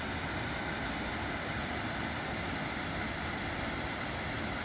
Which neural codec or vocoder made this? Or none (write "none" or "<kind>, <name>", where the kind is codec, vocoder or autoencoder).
none